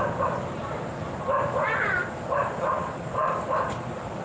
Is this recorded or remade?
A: recorded